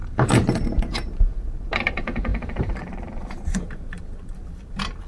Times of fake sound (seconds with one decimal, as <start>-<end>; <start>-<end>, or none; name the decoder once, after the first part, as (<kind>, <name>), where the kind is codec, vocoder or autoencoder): 0.0-5.1 (vocoder, BigVGAN v2)